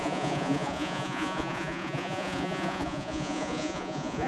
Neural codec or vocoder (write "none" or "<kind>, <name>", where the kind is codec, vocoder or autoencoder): vocoder, Vocos